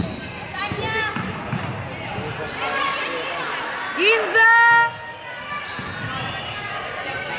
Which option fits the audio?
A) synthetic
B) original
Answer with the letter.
B